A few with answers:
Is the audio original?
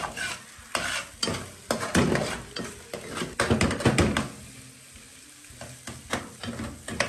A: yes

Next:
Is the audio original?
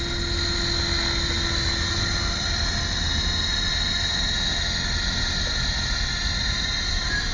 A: yes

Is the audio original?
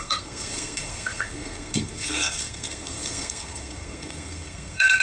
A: no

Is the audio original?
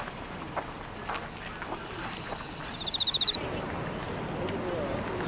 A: yes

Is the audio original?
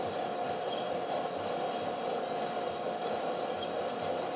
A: yes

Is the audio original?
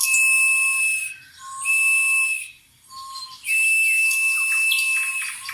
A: yes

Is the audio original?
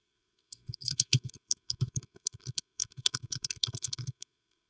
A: no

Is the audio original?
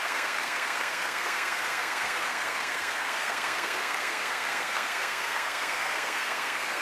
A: no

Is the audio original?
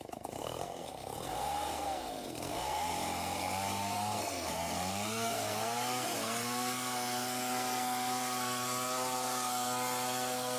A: no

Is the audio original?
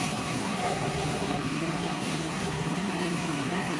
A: no